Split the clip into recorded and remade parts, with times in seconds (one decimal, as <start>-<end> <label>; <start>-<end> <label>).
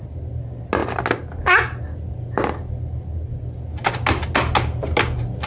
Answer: 0.0-5.5 recorded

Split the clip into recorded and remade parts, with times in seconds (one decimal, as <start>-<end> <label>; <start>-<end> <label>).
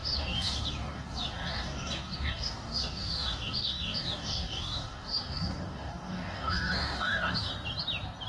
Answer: 0.0-7.5 remade; 7.5-8.3 recorded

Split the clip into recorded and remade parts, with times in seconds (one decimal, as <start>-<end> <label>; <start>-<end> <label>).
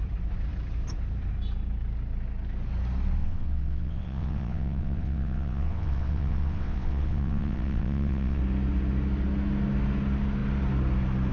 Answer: 0.0-3.2 recorded; 3.2-8.4 remade; 8.4-11.3 recorded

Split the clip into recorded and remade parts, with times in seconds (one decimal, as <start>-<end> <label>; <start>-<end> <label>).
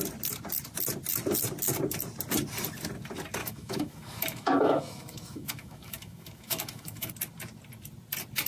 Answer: 0.0-3.4 recorded; 3.4-7.1 remade; 7.1-8.5 recorded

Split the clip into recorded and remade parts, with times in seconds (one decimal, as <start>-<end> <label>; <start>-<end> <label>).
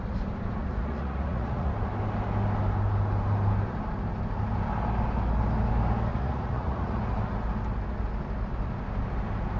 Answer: 0.0-0.6 recorded; 0.6-1.7 remade; 1.7-6.1 recorded; 6.1-7.0 remade; 7.0-9.6 recorded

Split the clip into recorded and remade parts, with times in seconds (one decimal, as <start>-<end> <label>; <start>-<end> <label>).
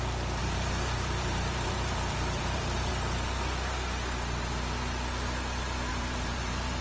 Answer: 0.0-0.4 recorded; 0.4-2.9 remade; 2.9-5.9 recorded; 5.9-6.8 remade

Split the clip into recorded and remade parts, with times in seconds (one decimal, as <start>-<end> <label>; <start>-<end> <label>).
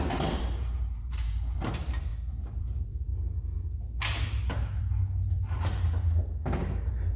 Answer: 0.0-2.1 remade; 2.1-2.6 recorded; 2.6-3.1 remade; 3.1-4.4 recorded; 4.4-5.0 remade; 5.0-6.6 recorded; 6.6-7.2 remade